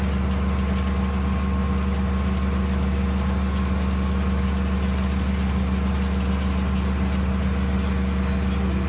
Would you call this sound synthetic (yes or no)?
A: no